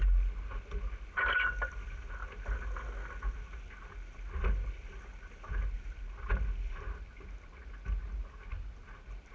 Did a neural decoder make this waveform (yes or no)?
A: no